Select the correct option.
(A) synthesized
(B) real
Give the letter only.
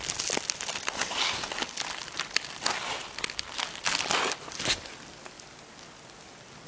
B